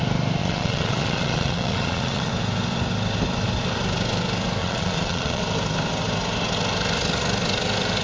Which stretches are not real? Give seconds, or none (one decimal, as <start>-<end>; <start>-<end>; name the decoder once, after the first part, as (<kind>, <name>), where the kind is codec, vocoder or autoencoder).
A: 0.4-2.3 (vocoder, Vocos); 4.6-5.4

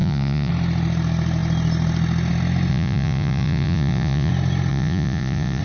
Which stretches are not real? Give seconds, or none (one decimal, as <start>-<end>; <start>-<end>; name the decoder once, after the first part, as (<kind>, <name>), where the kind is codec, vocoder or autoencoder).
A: 0.0-0.5 (vocoder, Vocos); 2.7-4.3; 4.7-5.6

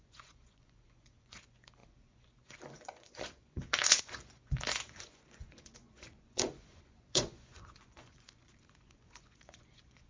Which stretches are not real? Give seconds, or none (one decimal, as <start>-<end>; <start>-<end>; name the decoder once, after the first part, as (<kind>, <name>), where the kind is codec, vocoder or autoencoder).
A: 0.0-10.1 (vocoder, Vocos)

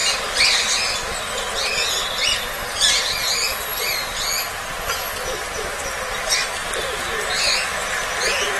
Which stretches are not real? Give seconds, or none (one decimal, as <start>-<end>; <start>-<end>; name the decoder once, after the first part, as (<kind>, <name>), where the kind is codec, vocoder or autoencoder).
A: none

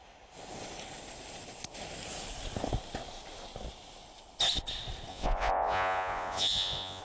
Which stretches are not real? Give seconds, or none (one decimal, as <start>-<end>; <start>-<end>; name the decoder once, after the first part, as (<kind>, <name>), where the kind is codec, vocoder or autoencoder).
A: 5.1-7.0 (vocoder, Vocos)

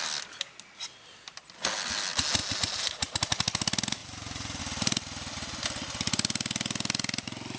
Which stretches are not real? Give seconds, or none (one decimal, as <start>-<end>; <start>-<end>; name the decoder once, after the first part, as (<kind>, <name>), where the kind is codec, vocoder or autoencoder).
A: 4.0-4.6 (vocoder, Vocos)

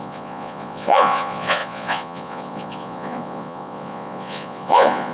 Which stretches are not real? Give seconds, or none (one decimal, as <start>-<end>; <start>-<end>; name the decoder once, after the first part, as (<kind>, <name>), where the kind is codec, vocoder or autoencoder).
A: 0.0-5.1 (vocoder, Vocos)

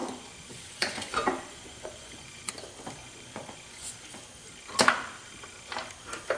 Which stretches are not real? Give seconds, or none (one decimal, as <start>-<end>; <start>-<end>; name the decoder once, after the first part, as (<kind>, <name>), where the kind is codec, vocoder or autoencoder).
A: 0.0-2.5 (vocoder, Vocos); 3.0-3.9